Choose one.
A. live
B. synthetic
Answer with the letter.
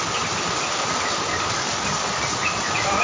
A